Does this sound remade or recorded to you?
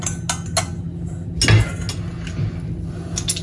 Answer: recorded